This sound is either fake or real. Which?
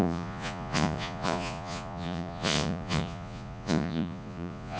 fake